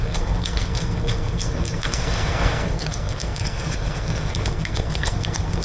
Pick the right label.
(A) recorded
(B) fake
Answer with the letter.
B